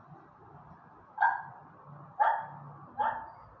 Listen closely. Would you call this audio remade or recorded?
recorded